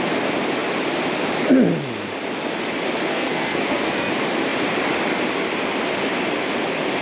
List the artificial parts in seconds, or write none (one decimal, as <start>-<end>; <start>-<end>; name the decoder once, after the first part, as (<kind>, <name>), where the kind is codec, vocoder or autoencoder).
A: 3.1-4.1 (codec, SNAC)